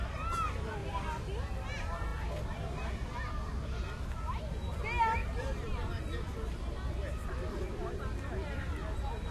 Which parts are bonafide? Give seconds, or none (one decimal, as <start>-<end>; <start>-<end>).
0.0-9.3